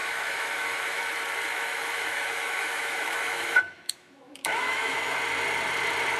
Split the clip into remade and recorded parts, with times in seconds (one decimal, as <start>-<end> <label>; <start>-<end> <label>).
0.0-1.0 remade; 1.0-1.5 recorded; 1.5-5.2 remade; 5.2-6.2 recorded